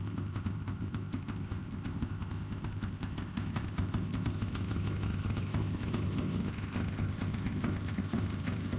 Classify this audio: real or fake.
fake